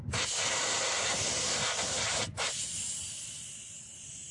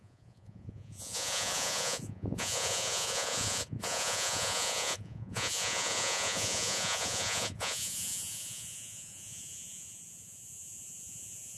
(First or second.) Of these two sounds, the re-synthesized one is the second